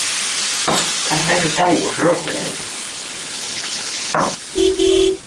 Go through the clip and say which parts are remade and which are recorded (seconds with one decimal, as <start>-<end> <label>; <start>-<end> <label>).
0.0-1.2 recorded; 1.2-4.4 remade; 4.4-5.3 recorded